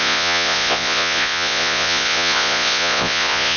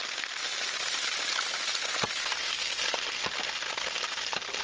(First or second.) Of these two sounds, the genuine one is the second